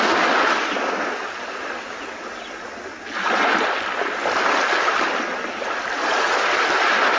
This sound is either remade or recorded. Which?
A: recorded